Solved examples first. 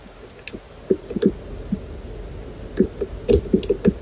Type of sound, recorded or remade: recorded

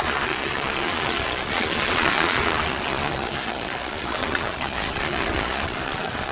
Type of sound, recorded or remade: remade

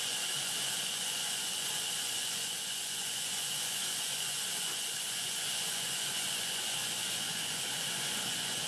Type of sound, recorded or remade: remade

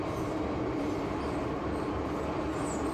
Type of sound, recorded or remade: recorded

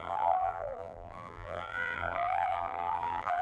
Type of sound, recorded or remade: remade